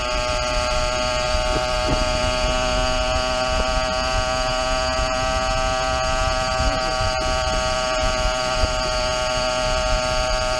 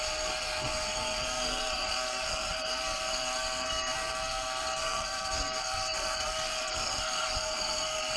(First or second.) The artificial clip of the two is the second